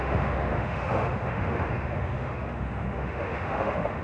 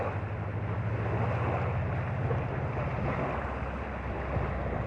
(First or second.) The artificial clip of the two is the first